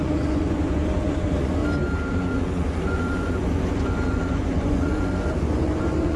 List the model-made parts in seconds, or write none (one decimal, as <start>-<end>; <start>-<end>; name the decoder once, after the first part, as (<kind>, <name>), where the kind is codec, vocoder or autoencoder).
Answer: 0.0-1.6 (vocoder, Vocos); 2.1-6.2